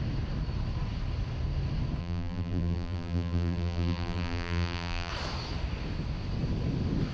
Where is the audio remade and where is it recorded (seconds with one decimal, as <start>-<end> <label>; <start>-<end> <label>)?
0.0-2.0 recorded; 2.0-5.1 remade; 5.1-7.1 recorded